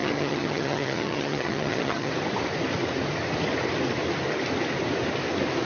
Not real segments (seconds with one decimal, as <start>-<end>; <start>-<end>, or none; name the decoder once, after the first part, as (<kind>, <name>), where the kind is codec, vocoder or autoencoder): 0.0-2.1 (vocoder, HiFi-GAN)